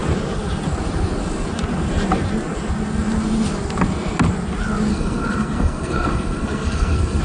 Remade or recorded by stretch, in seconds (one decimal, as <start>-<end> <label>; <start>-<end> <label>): 0.0-4.9 recorded; 4.9-7.2 remade